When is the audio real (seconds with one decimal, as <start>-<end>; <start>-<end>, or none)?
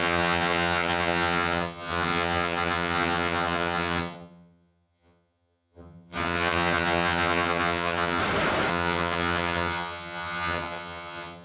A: 8.2-8.7